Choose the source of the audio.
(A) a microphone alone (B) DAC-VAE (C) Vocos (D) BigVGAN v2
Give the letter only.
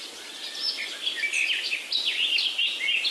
A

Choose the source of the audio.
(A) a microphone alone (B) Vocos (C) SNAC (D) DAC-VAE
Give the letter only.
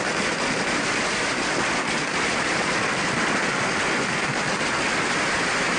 A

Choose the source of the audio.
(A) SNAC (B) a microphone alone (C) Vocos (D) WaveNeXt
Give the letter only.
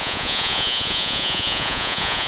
C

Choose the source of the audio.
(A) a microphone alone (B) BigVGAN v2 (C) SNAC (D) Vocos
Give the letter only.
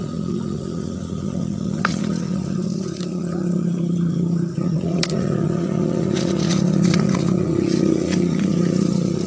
D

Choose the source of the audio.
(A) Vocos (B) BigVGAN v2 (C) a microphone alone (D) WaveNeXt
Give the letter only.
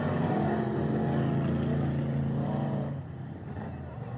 C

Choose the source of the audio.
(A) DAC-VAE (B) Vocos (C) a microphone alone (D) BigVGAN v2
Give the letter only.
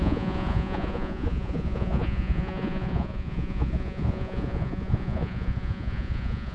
B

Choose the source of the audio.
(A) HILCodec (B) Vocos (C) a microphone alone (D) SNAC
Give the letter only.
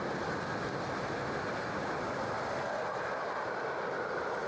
C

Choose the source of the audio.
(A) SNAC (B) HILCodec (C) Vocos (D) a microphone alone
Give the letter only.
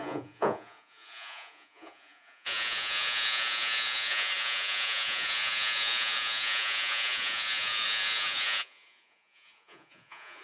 C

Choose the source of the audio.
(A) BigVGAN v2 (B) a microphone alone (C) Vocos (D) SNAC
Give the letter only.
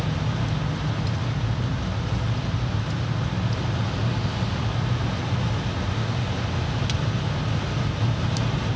B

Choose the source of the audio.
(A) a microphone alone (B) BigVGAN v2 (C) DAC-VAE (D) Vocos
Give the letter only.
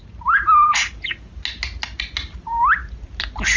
A